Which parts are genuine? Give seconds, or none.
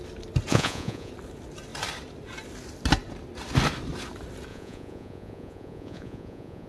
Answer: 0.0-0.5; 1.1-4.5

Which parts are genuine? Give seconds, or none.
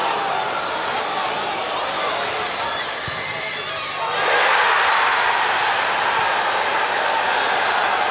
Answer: 0.0-8.1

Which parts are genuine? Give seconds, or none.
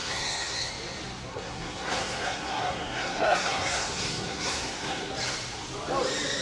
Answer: 0.7-1.3; 5.1-6.4